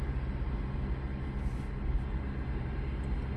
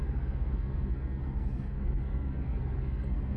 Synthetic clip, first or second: second